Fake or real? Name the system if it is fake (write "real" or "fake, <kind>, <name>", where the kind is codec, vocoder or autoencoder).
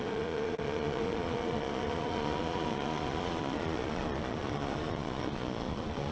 fake, vocoder, Vocos